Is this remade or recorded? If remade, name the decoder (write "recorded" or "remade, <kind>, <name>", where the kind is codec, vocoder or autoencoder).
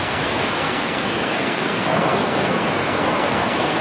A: remade, codec, SNAC